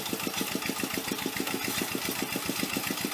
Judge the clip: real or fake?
real